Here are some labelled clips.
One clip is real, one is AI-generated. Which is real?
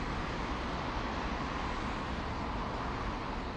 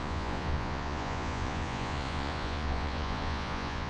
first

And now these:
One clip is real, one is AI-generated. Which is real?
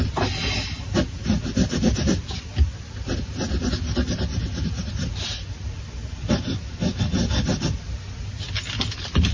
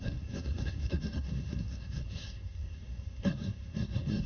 first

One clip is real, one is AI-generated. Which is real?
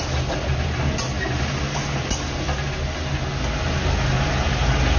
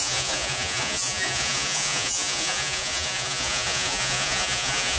first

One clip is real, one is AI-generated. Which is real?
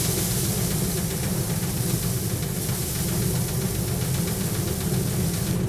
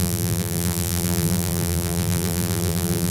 first